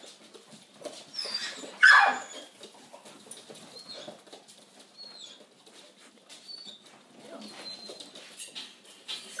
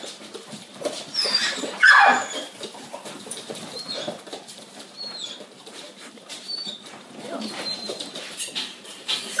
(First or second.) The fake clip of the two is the second